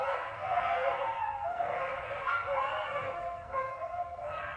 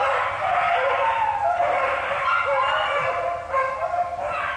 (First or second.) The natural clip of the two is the second